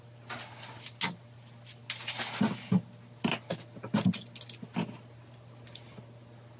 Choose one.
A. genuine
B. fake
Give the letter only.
A